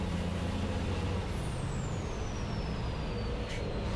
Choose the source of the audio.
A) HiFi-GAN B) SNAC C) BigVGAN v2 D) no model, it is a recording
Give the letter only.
D